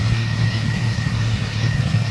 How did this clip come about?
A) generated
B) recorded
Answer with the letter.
A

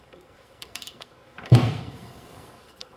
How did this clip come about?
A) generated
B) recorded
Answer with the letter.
A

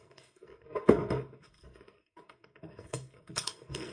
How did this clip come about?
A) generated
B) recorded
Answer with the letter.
A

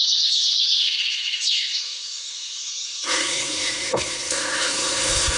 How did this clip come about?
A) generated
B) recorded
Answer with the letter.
A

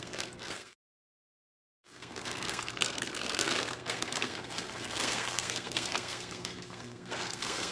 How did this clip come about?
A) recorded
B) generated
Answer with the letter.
B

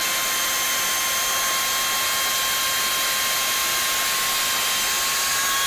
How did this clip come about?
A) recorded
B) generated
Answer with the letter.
A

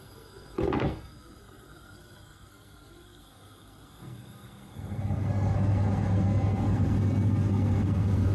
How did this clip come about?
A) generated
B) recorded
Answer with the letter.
A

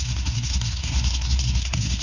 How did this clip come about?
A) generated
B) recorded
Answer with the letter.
A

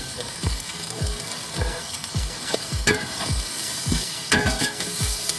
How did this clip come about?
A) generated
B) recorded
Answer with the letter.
A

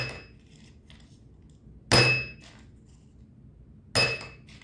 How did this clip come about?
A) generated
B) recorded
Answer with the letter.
B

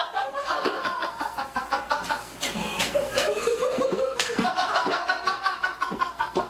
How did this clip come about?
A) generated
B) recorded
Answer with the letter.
A